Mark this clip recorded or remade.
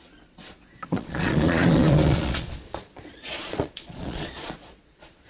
remade